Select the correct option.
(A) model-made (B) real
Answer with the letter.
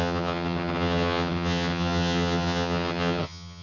A